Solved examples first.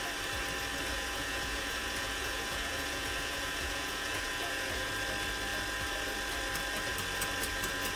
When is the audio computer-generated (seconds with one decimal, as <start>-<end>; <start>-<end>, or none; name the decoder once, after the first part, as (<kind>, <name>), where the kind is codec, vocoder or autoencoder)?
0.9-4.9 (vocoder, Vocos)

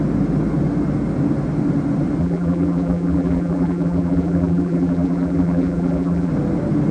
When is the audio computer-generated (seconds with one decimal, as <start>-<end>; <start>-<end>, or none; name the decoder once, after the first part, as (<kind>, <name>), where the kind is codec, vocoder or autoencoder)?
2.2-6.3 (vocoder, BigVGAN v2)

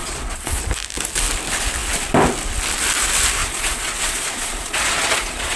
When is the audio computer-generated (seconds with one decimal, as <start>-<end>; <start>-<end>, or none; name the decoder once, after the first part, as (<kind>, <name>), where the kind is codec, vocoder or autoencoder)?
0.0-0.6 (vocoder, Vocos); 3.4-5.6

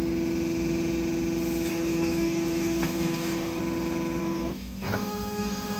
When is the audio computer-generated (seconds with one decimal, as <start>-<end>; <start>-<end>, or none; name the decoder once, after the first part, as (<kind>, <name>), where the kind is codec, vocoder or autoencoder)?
1.7-3.6 (codec, DAC); 4.2-5.8

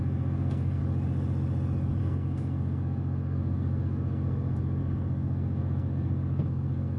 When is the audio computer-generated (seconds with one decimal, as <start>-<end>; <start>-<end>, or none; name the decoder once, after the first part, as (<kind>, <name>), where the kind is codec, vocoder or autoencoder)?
0.0-0.8 (codec, SNAC); 2.0-7.0

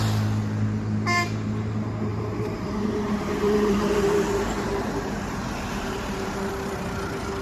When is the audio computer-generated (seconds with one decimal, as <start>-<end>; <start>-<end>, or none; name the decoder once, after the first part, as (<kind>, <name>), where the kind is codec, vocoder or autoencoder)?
2.1-6.5 (vocoder, BigVGAN v2)

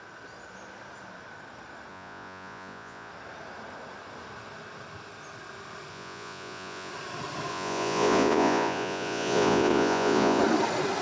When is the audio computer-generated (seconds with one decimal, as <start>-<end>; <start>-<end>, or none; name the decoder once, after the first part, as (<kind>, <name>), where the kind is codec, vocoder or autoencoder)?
1.9-3.1 (vocoder, Vocos); 5.9-6.9; 7.5-10.4